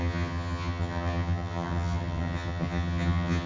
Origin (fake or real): fake